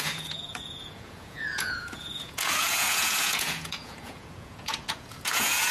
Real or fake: fake